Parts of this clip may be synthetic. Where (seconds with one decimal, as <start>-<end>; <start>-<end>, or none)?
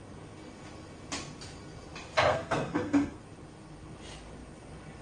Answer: 2.3-3.2